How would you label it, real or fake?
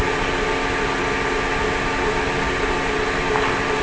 real